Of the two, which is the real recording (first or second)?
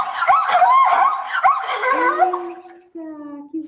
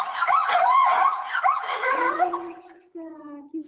first